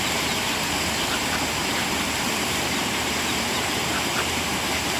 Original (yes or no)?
no